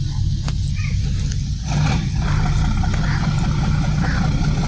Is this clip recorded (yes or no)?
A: yes